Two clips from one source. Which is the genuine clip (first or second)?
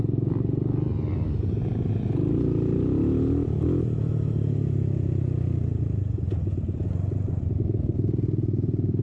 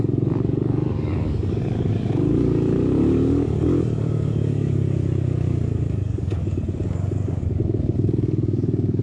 first